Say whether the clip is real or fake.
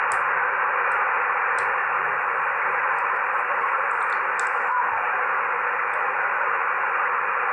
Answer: real